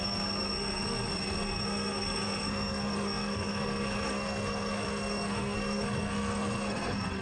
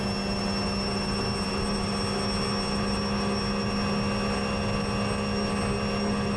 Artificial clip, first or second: first